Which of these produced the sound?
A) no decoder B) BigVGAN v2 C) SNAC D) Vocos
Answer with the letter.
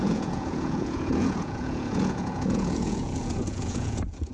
D